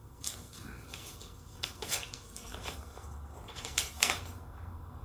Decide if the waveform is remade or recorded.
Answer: remade